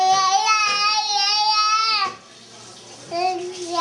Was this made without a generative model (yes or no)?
yes